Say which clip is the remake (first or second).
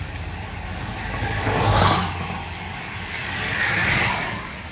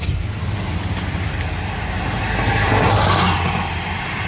first